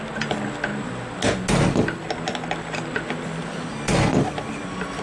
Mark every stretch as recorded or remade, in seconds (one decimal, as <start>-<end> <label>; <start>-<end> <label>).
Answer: 0.0-5.0 recorded